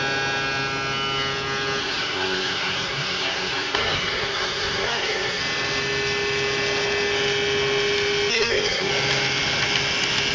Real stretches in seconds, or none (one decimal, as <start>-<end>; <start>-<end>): 0.0-1.8; 5.4-8.3; 8.9-10.3